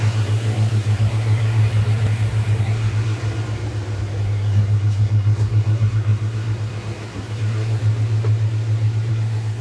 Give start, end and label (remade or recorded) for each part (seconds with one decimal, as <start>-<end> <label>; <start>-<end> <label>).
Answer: 0.0-1.6 remade; 1.6-2.6 recorded; 2.6-3.2 remade; 3.2-4.2 recorded; 4.2-7.8 remade; 7.8-9.1 recorded; 9.1-9.6 remade